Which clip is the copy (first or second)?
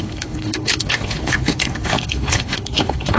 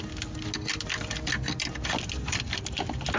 first